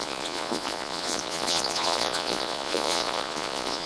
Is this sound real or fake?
fake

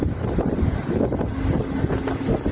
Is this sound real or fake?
real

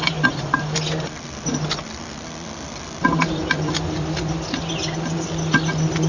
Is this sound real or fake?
real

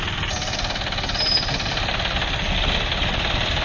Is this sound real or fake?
real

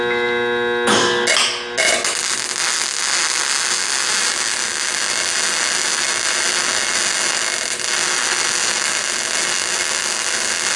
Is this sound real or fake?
real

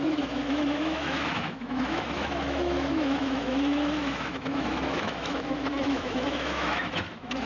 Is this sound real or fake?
fake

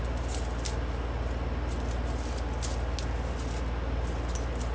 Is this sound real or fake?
real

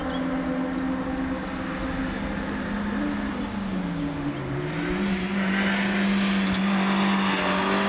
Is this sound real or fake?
real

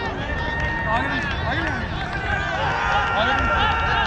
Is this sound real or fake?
real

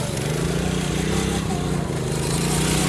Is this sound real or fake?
real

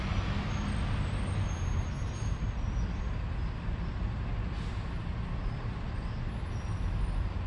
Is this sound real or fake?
real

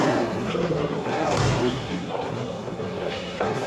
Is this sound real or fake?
fake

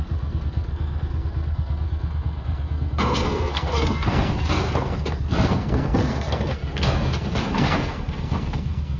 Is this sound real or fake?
fake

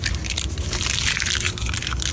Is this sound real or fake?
real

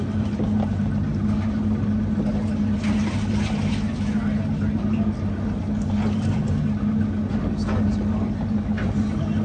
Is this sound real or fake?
real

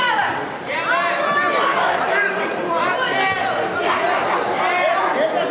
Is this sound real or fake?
real